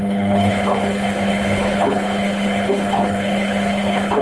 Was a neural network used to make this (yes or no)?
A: yes